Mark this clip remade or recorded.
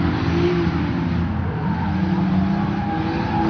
recorded